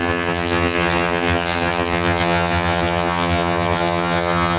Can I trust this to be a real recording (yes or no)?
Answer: no